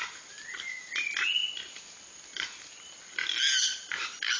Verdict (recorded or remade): recorded